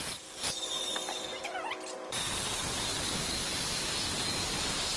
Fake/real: real